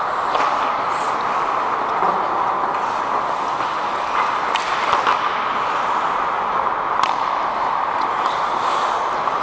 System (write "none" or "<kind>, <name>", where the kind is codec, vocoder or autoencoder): none